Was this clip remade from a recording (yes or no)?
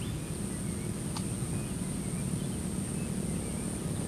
no